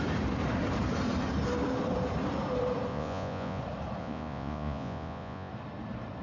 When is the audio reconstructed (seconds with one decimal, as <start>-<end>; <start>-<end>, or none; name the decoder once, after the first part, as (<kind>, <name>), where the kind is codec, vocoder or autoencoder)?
2.9-3.6 (vocoder, Vocos); 4.0-5.5